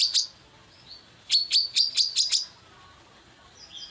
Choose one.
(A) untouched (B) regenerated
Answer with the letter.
A